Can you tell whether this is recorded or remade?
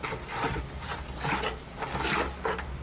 recorded